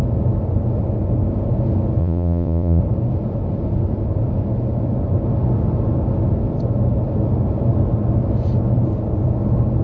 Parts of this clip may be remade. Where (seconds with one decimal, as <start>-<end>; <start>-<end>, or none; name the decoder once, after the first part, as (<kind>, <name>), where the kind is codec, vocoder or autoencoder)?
2.0-2.8 (vocoder, Vocos)